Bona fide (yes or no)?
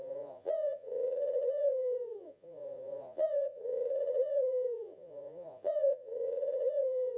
no